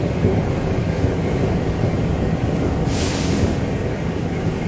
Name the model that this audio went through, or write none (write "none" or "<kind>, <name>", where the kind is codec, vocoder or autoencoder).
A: codec, DAC